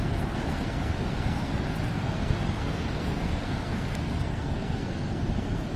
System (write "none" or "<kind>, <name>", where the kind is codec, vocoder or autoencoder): codec, SNAC